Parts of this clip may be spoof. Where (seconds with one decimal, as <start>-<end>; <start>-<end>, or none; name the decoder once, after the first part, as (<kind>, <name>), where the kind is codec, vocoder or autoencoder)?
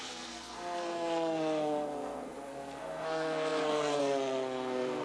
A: 0.0-5.0 (codec, SNAC)